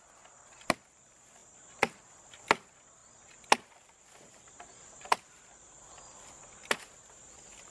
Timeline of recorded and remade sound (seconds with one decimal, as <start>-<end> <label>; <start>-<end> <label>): 0.0-7.7 recorded